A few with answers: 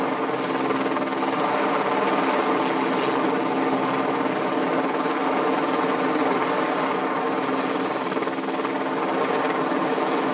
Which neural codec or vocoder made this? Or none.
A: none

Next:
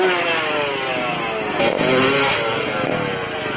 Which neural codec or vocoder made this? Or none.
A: none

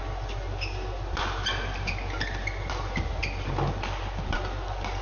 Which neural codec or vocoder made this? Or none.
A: none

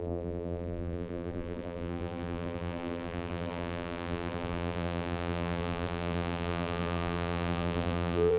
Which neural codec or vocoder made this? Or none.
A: vocoder, BigVGAN v2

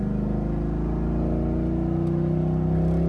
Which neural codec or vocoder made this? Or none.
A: none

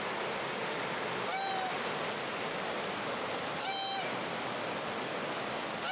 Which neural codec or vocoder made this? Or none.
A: none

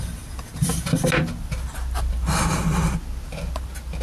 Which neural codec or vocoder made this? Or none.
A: none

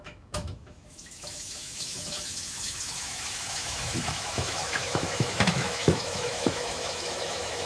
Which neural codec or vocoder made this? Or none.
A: autoencoder, DAC-VAE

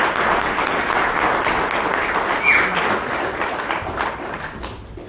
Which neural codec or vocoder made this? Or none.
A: none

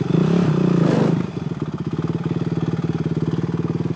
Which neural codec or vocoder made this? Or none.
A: none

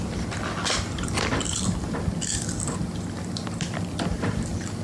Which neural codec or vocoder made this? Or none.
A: none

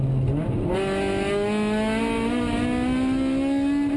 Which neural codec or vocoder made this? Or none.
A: none